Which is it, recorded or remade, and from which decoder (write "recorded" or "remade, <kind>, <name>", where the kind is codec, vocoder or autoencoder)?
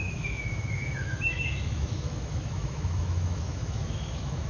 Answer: remade, autoencoder, DAC-VAE